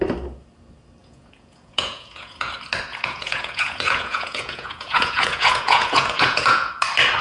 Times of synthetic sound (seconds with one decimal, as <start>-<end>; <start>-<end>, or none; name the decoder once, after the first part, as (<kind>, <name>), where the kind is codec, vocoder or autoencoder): 1.0-2.5 (vocoder, Vocos); 2.9-6.7

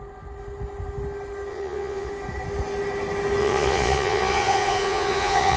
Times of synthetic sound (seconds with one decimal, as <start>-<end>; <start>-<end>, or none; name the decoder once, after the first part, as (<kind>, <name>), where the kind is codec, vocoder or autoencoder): 1.5-2.1 (vocoder, Vocos); 3.4-5.6

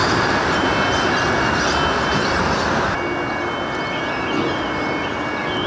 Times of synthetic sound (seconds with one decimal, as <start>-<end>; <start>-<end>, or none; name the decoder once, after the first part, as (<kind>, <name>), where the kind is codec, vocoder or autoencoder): none

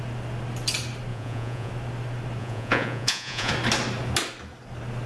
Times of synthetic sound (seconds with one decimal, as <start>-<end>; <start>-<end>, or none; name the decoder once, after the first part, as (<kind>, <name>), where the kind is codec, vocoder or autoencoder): 1.1-1.7 (vocoder, Vocos); 2.4-3.5

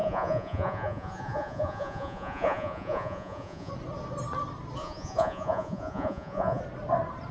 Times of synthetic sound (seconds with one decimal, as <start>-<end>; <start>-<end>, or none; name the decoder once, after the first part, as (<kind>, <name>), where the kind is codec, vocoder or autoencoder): 0.0-3.7 (vocoder, Vocos); 4.8-6.6

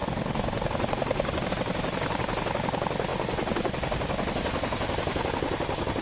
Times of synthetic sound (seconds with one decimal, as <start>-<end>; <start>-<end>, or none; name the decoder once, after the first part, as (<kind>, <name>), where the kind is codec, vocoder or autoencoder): none